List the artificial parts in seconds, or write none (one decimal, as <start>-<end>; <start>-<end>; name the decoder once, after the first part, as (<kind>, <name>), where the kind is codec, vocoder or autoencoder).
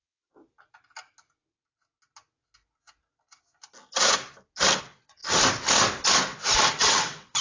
0.0-0.4 (vocoder, WaveNeXt); 4.8-5.2; 6.8-7.4